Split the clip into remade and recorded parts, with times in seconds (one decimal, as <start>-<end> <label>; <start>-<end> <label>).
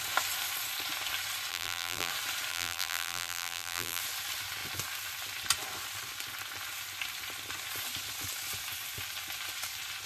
0.0-1.5 recorded; 1.5-2.1 remade; 2.1-2.5 recorded; 2.5-4.0 remade; 4.0-10.1 recorded